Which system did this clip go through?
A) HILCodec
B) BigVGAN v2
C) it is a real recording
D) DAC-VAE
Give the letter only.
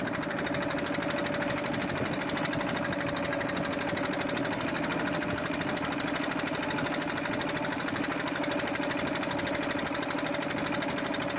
C